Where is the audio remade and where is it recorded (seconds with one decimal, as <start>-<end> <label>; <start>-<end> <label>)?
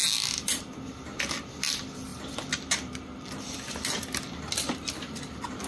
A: 0.0-5.7 recorded